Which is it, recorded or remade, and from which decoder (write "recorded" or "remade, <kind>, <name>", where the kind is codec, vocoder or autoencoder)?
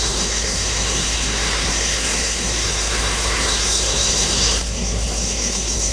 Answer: remade, codec, SNAC